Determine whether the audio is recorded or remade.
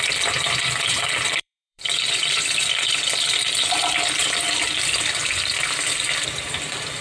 remade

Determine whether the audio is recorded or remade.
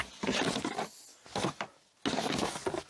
recorded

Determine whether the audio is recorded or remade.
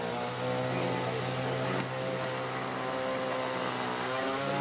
recorded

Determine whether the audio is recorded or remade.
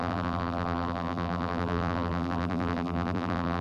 remade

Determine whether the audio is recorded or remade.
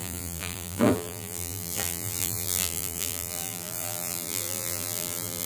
remade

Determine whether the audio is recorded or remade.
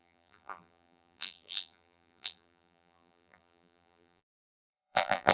remade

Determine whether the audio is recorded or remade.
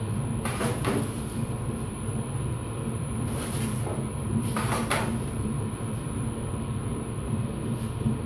remade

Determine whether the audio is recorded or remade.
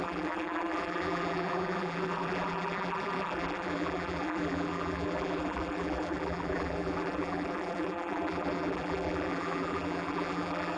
remade